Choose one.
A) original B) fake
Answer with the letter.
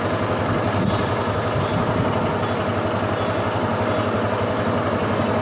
A